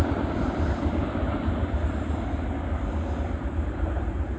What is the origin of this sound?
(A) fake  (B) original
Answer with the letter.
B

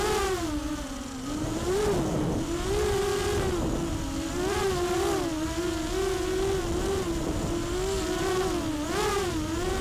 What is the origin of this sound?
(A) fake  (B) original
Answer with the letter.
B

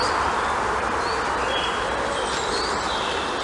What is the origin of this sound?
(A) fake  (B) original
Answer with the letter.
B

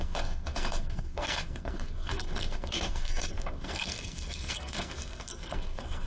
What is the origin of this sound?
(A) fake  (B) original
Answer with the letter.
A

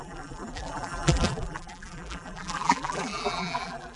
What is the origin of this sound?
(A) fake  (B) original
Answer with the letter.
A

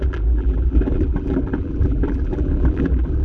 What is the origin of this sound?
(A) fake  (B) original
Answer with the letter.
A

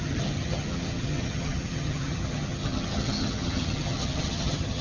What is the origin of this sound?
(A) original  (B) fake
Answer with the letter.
B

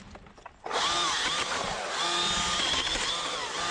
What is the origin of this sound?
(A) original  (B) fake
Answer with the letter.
A